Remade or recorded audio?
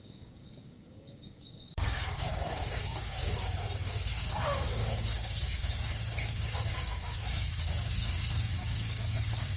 remade